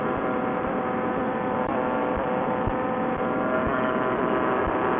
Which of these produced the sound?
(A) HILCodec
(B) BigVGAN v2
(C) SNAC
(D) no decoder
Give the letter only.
D